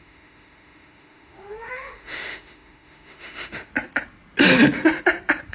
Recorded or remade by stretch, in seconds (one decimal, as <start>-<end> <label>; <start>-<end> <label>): 0.0-3.7 remade; 3.7-5.5 recorded